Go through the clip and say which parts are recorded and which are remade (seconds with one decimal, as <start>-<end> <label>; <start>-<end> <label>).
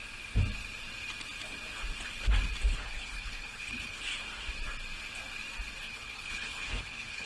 0.0-2.7 recorded; 2.7-4.1 remade; 4.1-5.8 recorded; 5.8-7.3 remade